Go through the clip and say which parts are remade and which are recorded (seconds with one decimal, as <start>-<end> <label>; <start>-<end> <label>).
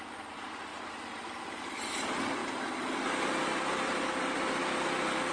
0.0-0.7 remade; 0.7-1.6 recorded; 1.6-2.4 remade; 2.4-3.4 recorded; 3.4-5.3 remade